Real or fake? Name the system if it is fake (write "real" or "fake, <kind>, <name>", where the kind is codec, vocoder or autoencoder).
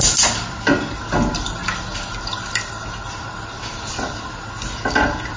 real